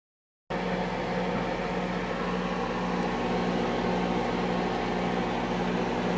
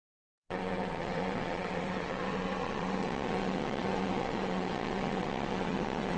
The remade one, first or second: second